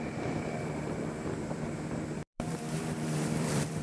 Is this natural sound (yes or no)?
no